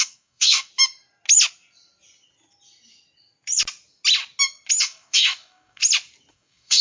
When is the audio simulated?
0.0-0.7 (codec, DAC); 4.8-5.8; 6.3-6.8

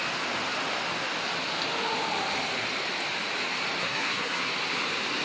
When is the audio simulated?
3.8-4.5 (codec, SNAC)

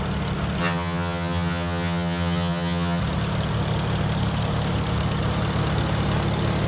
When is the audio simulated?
0.6-3.0 (vocoder, HiFi-GAN)

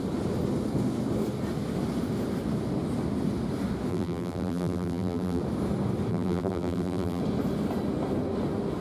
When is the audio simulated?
3.9-5.4 (vocoder, BigVGAN v2); 6.1-7.2

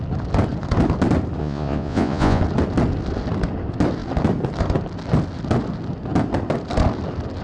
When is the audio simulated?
1.4-2.4 (vocoder, Vocos)

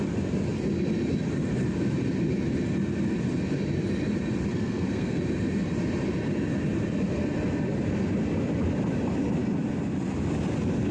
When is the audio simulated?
4.5-5.2 (codec, SNAC)